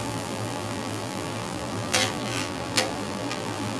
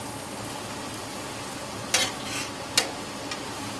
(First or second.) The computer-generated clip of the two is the first